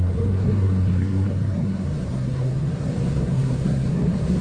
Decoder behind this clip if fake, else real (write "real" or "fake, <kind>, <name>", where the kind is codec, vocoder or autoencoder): fake, codec, SNAC